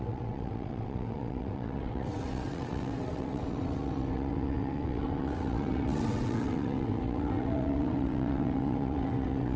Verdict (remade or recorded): remade